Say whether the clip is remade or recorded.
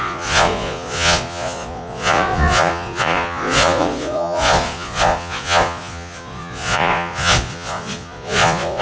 remade